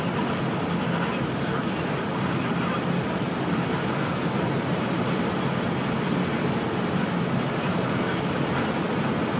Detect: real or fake real